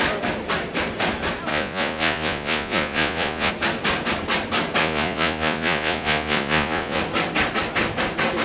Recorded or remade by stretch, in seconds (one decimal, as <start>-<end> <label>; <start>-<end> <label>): 0.0-1.5 recorded; 1.5-3.5 remade; 3.5-4.8 recorded; 4.8-7.0 remade; 7.0-8.4 recorded